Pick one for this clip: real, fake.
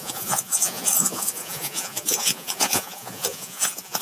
fake